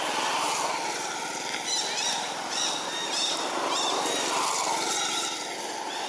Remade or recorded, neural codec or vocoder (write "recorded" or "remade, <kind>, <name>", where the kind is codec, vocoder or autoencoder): recorded